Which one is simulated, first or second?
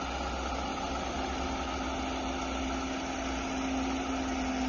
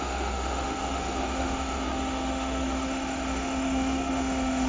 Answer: second